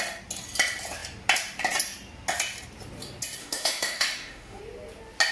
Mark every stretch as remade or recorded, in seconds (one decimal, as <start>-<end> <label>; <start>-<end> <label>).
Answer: 0.0-3.4 recorded; 3.4-4.6 remade; 4.6-5.3 recorded